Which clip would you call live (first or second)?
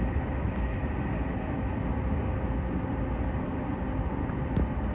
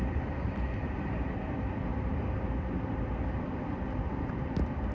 first